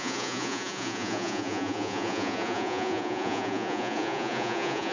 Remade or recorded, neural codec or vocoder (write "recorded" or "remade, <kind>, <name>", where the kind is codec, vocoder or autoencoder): remade, vocoder, Vocos